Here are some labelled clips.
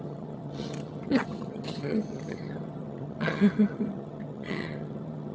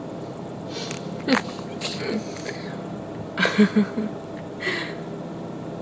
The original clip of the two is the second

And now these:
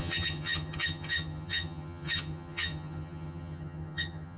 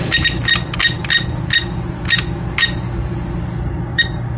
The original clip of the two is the second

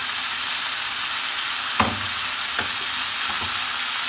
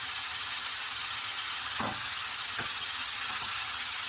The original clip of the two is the first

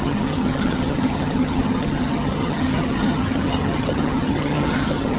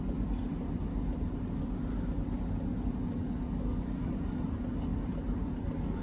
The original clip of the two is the second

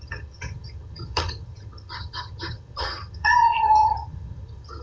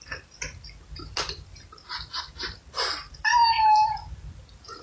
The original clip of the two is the second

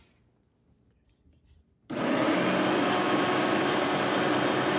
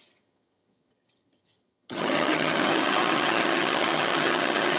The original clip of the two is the first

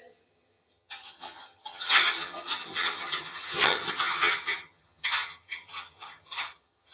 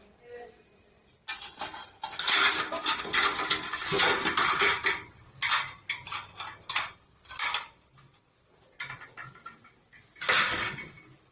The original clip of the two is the second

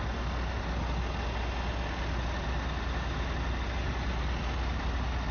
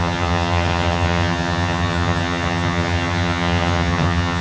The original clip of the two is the first